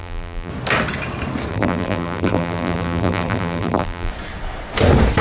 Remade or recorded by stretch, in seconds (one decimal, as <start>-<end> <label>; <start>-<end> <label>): 0.0-0.5 remade; 0.5-1.5 recorded; 1.5-4.1 remade; 4.1-5.2 recorded